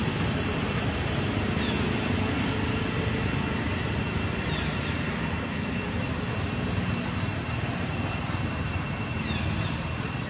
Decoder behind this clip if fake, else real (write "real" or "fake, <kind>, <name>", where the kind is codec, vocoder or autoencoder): real